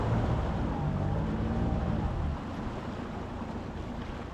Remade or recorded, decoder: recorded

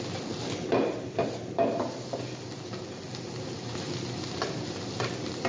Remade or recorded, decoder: recorded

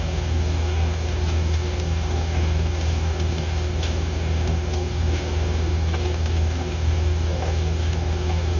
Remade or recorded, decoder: remade, codec, DAC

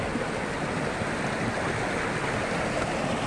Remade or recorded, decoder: recorded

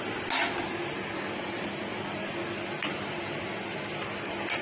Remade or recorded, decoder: recorded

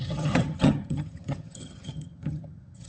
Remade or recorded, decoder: remade, vocoder, HiFi-GAN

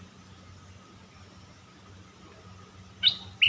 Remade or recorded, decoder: recorded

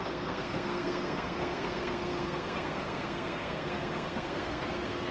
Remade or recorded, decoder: remade, codec, SNAC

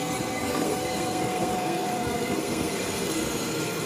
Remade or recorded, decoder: remade, codec, SNAC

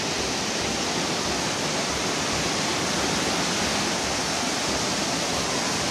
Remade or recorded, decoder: recorded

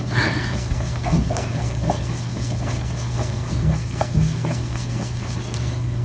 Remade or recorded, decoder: remade, codec, SNAC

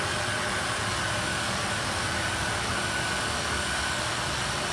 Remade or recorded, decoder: recorded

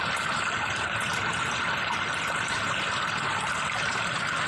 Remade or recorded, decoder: recorded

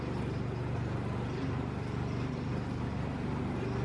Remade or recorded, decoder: recorded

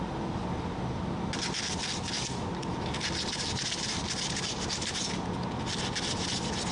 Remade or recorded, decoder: recorded